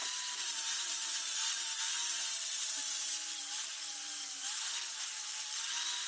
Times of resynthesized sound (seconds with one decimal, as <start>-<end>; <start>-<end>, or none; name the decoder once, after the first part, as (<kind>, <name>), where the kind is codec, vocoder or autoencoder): 0.0-1.4 (vocoder, BigVGAN v2); 3.4-6.1

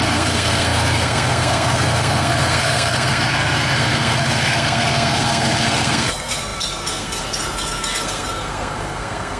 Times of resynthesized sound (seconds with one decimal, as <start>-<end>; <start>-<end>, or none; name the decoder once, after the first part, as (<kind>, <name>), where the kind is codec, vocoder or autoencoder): 0.0-9.4 (codec, SNAC)

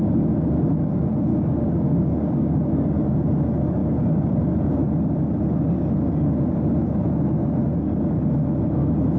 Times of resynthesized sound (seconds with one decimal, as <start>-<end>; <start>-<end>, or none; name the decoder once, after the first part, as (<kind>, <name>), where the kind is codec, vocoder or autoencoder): 1.3-2.7 (codec, DAC)

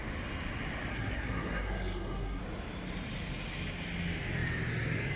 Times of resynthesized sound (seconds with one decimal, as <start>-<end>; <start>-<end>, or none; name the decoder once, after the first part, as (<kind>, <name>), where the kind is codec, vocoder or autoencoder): 0.9-2.4 (codec, SNAC)

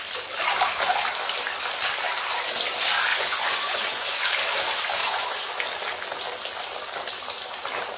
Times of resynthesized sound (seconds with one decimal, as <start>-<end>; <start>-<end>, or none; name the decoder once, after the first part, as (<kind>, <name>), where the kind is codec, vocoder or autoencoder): 3.1-4.3 (vocoder, Vocos); 5.0-5.5